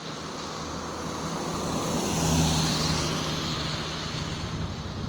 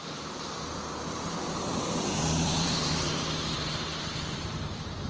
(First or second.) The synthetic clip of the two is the second